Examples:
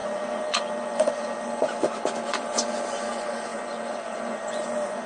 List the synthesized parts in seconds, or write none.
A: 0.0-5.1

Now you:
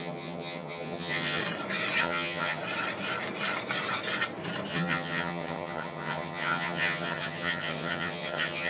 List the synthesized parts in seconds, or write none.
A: 0.0-1.4; 2.0-2.6; 4.7-8.7

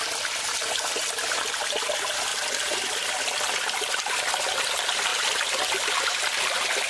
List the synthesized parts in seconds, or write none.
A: 5.1-6.4

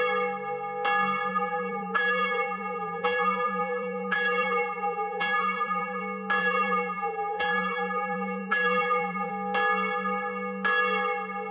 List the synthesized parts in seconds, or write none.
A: 1.3-6.0; 6.4-9.3

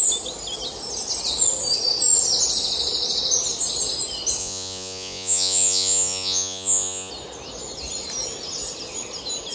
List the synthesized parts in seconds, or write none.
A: 4.4-7.1

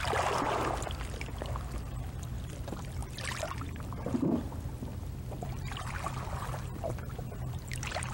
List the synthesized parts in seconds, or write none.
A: none

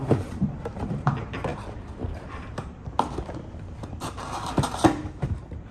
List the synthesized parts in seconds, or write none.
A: 0.0-1.5; 2.3-2.8; 3.9-5.7

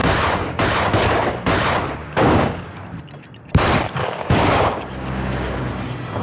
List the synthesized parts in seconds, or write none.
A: 0.0-0.6; 2.0-2.8; 4.0-5.7